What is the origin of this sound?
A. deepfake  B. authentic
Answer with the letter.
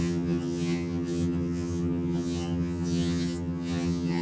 A